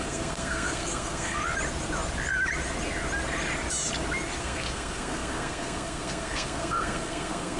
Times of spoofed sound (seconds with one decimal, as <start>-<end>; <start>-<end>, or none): 0.0-1.4; 4.4-7.6

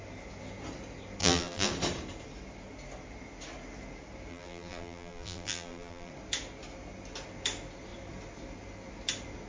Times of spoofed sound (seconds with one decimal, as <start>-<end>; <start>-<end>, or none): 1.2-1.7; 4.3-6.1

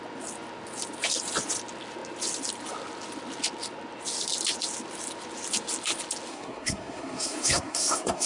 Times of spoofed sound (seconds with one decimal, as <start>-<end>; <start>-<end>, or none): 6.3-8.3

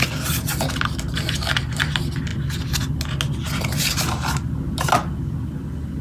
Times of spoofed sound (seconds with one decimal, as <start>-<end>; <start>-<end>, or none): none